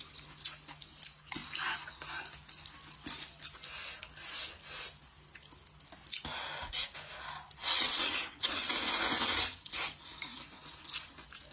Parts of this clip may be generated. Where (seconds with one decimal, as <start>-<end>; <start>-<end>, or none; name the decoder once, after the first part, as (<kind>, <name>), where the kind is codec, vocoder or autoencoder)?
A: 7.6-8.7 (vocoder, WaveNeXt)